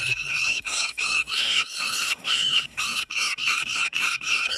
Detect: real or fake fake